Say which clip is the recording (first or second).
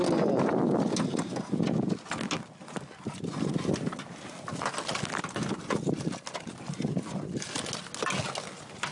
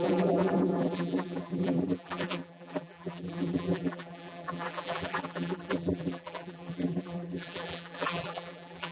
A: first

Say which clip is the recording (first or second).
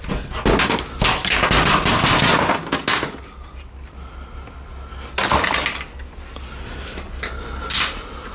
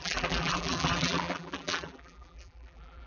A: first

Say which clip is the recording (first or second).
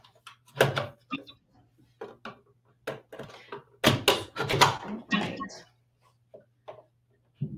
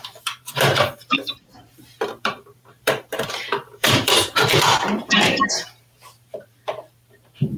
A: first